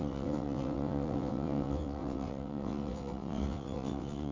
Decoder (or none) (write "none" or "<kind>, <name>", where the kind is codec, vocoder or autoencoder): vocoder, WaveNeXt